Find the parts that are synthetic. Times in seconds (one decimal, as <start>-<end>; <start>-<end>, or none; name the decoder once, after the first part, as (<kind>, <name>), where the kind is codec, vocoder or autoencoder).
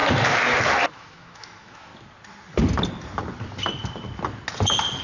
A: 0.9-1.9 (autoencoder, DAC-VAE)